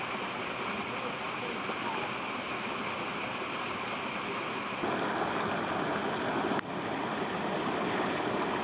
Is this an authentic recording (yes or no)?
yes